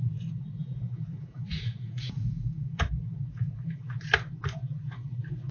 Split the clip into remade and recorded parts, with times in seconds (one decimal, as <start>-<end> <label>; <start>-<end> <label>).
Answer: 0.0-0.6 recorded; 0.6-3.2 remade; 3.2-5.5 recorded

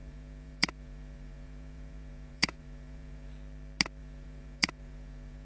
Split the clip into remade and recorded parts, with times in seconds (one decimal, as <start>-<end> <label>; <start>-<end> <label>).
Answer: 0.0-3.3 remade; 3.3-4.0 recorded; 4.0-5.5 remade

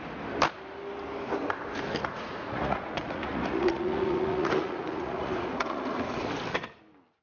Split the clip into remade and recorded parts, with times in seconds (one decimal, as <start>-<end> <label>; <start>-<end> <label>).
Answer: 0.0-2.0 recorded; 2.0-6.3 remade; 6.3-7.2 recorded

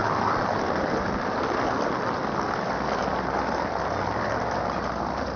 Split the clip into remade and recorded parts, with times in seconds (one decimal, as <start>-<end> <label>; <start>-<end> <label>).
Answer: 0.0-5.4 recorded

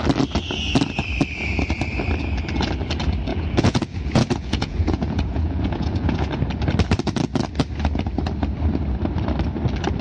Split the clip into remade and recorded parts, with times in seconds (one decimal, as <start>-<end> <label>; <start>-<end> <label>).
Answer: 0.0-3.3 recorded; 3.3-6.3 remade; 6.3-10.0 recorded